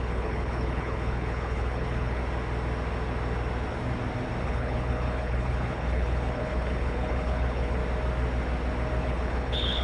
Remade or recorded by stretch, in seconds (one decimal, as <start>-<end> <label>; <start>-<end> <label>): 0.0-2.2 remade; 2.2-4.4 recorded; 4.4-7.8 remade; 7.8-9.0 recorded; 9.0-9.8 remade